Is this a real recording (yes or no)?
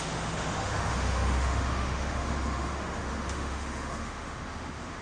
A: no